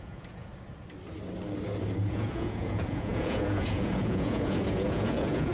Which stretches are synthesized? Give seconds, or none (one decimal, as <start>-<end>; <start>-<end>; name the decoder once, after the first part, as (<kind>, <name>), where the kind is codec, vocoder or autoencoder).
0.0-0.5 (vocoder, Vocos); 2.1-5.5